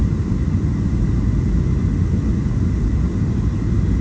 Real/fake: real